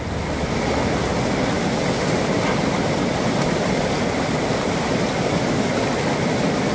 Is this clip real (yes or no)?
yes